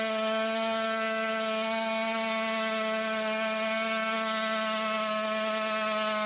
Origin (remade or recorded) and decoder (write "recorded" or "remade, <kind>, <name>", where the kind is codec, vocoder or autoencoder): recorded